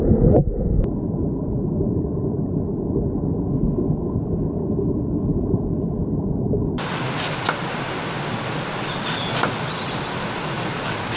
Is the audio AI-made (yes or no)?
no